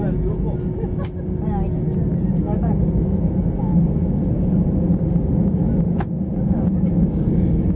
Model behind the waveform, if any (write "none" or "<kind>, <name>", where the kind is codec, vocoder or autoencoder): none